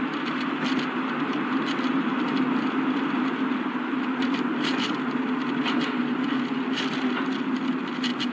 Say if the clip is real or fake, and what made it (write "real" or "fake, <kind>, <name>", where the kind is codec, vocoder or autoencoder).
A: real